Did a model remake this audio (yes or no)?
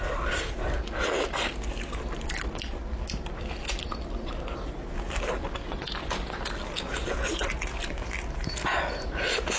no